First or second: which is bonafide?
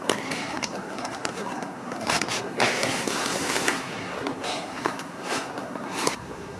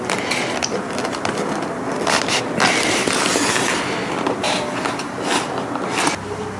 second